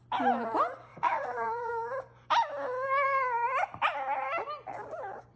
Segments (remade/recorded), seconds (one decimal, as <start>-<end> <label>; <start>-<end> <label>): 0.0-0.9 recorded; 0.9-1.7 remade; 1.7-5.4 recorded